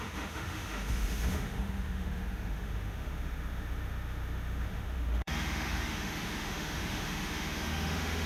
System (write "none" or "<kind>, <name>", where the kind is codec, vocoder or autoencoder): autoencoder, DAC-VAE